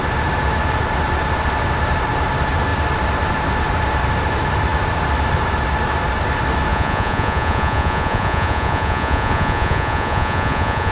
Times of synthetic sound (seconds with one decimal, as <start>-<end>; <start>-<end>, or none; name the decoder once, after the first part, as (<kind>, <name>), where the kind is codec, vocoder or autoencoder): 6.7-10.9 (vocoder, Vocos)

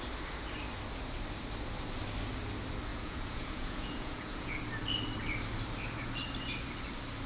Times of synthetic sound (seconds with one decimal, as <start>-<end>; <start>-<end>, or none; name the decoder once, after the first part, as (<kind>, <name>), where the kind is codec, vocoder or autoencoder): 2.9-4.6 (vocoder, Vocos)

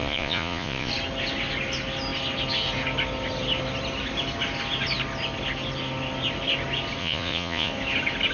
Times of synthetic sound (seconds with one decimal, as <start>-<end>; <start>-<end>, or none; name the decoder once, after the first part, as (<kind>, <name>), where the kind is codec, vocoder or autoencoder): 0.0-0.9 (vocoder, Vocos); 7.0-7.7